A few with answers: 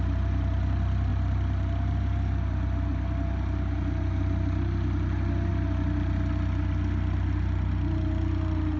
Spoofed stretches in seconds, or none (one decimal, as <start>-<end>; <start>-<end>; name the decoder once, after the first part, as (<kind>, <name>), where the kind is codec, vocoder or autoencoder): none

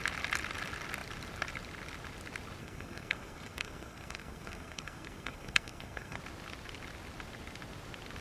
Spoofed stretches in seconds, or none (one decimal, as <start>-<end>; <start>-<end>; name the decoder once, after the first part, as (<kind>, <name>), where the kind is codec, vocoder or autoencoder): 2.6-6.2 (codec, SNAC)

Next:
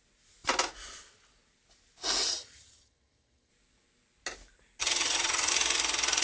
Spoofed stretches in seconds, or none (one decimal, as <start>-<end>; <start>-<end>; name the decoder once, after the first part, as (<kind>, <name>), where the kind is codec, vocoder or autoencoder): 2.3-3.5 (vocoder, HiFi-GAN); 4.8-5.5

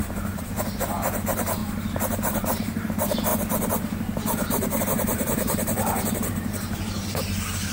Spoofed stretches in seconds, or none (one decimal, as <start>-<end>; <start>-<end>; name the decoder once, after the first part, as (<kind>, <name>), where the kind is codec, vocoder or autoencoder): 0.0-3.3 (vocoder, BigVGAN v2); 4.8-7.7